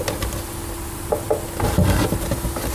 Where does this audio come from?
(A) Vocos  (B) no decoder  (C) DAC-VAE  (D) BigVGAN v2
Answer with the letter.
B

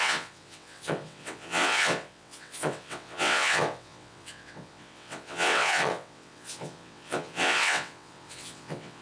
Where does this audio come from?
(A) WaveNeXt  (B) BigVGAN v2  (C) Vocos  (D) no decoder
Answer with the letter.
A